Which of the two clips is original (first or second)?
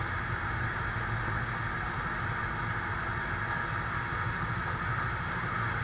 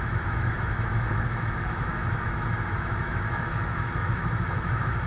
first